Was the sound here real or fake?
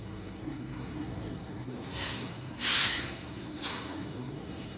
fake